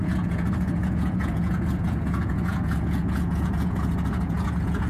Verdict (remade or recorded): remade